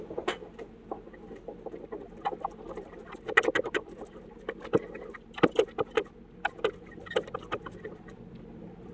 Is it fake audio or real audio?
real